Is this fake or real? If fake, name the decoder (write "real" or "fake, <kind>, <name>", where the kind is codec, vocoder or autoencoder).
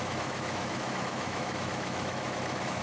fake, autoencoder, DAC-VAE